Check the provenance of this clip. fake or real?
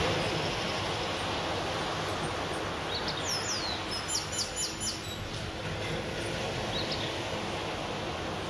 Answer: real